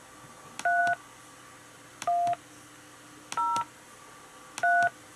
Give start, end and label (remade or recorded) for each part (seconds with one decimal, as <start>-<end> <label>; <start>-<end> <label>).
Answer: 0.0-5.2 recorded